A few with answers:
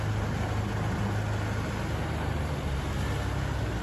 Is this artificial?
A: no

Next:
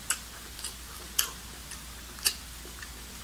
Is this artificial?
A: no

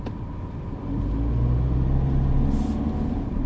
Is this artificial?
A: no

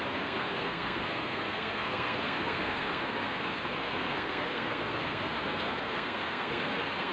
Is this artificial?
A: yes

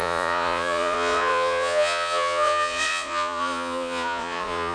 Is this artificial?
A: yes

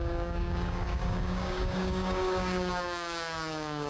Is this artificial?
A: yes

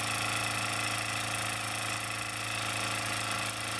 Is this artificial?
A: no